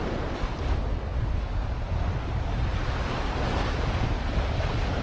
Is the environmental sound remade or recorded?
recorded